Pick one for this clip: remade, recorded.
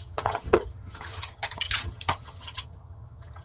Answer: remade